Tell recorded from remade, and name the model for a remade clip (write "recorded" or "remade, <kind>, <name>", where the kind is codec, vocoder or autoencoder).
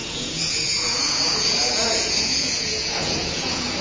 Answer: remade, vocoder, Vocos